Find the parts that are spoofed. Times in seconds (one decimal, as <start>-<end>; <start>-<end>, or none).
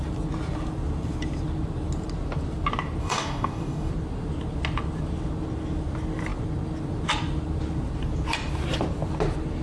3.0-3.9